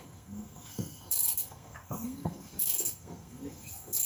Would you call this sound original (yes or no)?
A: no